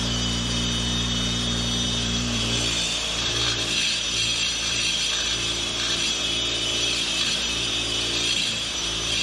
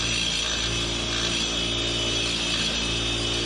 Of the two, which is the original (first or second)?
second